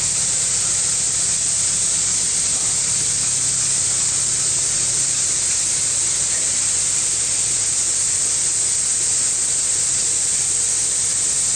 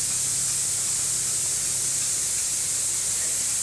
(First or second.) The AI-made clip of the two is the first